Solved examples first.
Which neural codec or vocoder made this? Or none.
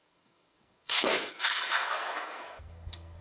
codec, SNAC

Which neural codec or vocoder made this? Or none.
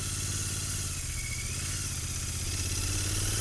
none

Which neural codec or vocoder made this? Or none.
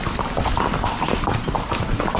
none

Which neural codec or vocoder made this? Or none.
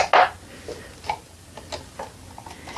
none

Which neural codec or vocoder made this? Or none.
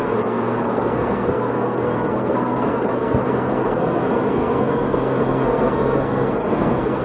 codec, SNAC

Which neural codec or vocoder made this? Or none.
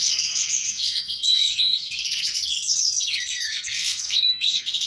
codec, SNAC